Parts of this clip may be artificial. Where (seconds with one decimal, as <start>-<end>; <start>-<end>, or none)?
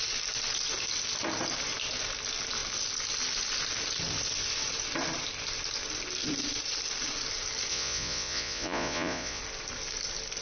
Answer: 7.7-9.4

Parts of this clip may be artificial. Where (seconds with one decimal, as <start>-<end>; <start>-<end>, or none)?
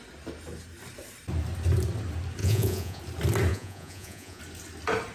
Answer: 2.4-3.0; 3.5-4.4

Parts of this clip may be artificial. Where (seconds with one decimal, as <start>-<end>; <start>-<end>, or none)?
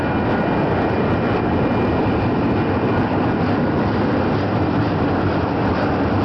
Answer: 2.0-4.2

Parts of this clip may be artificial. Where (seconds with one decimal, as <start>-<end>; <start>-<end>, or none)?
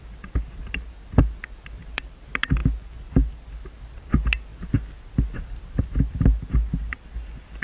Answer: none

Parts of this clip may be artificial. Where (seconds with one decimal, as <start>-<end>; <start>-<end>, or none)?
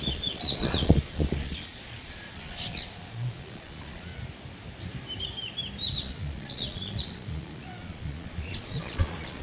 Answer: 0.0-4.1; 6.0-9.4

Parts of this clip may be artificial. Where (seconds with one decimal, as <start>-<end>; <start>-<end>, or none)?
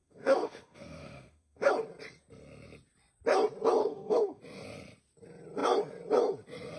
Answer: 0.0-1.7; 3.8-4.4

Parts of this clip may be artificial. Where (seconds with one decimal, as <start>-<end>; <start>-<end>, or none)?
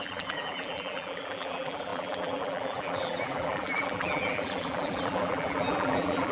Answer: 0.0-6.3